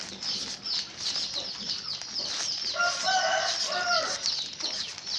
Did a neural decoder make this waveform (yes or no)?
no